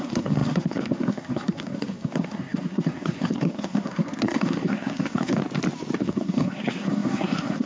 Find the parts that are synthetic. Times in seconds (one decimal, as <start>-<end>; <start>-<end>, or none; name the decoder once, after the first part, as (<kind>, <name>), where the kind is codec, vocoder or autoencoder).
0.0-5.4 (codec, SNAC); 6.0-7.7